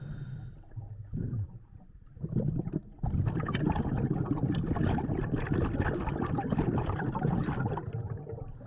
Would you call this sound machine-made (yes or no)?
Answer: no